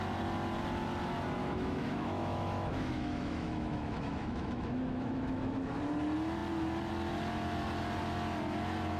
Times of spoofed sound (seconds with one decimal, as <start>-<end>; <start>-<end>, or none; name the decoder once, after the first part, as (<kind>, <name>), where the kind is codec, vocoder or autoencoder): 1.4-5.8 (autoencoder, DAC-VAE)